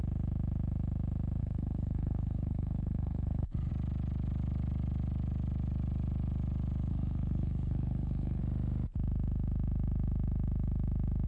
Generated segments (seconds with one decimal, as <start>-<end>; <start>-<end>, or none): 1.4-3.7; 6.9-8.4